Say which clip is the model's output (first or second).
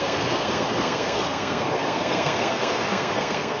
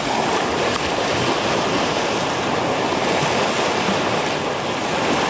first